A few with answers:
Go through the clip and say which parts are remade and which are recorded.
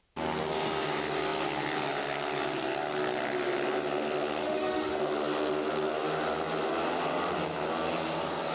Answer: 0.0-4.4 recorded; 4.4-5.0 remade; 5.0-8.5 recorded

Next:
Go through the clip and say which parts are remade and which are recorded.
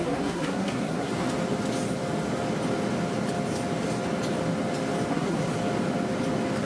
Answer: 0.0-1.1 remade; 1.1-5.1 recorded; 5.1-5.5 remade; 5.5-6.6 recorded